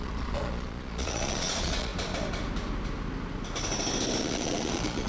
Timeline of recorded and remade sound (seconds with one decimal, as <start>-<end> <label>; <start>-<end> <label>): 0.0-1.9 remade; 1.9-4.2 recorded; 4.2-5.1 remade